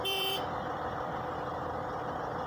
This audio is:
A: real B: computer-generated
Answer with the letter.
B